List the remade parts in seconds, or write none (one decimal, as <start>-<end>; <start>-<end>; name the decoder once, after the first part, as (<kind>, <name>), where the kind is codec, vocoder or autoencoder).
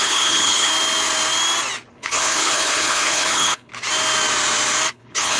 0.0-0.7 (codec, HILCodec); 1.9-3.7; 4.9-5.4